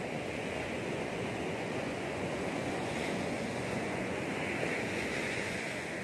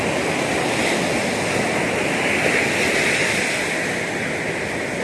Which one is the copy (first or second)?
first